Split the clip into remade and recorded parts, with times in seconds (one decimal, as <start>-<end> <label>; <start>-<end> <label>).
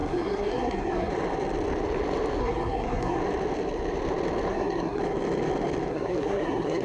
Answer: 0.0-1.1 remade; 1.1-2.4 recorded; 2.4-3.2 remade; 3.2-4.5 recorded; 4.5-5.0 remade; 5.0-5.9 recorded; 5.9-6.8 remade